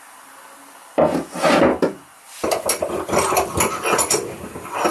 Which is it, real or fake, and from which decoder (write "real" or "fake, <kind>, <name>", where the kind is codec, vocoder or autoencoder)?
real